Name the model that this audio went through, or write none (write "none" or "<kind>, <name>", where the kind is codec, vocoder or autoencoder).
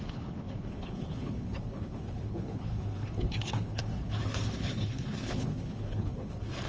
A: codec, HILCodec